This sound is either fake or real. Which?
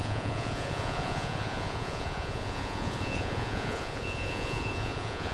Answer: fake